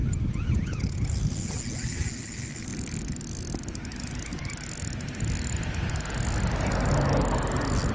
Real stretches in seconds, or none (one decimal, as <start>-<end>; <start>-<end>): 0.0-7.9